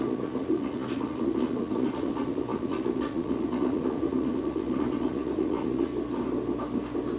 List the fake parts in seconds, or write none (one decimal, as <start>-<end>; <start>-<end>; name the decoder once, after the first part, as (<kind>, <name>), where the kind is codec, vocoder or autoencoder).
0.0-5.9 (vocoder, Vocos)